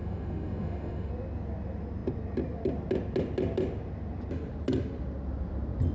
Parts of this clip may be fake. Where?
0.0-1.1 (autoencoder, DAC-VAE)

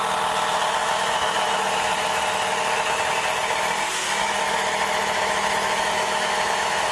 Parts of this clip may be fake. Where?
0.8-3.1 (autoencoder, DAC-VAE); 4.2-6.9

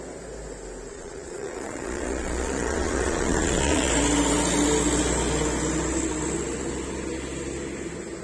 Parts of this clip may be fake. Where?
0.9-3.9 (vocoder, Vocos)

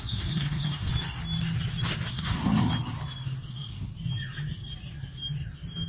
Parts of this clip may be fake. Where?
0.0-0.9 (codec, SNAC); 2.1-2.7; 3.5-3.9

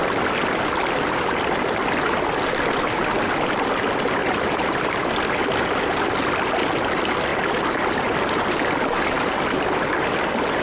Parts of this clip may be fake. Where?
none

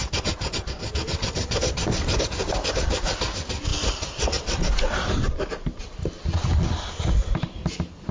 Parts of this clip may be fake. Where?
none

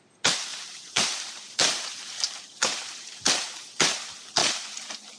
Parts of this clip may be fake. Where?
0.5-1.3 (vocoder, BigVGAN v2)